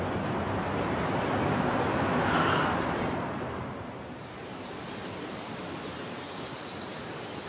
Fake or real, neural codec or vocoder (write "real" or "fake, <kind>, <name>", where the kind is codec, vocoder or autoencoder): fake, vocoder, BigVGAN v2